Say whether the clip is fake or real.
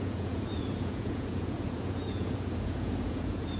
fake